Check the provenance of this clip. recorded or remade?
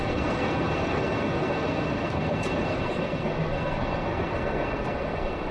remade